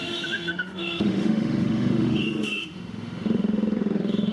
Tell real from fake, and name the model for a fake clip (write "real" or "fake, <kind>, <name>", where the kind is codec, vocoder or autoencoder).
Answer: fake, autoencoder, DAC-VAE